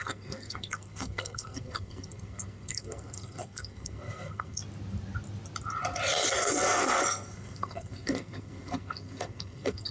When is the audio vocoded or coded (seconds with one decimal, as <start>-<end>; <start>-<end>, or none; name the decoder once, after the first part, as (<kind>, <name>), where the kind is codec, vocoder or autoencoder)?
0.0-4.6 (codec, SNAC); 6.3-9.9